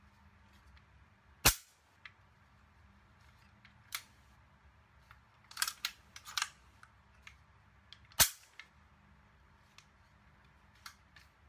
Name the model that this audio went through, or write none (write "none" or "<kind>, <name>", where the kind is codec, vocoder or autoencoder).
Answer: none